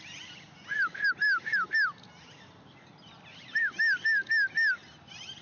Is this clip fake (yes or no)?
no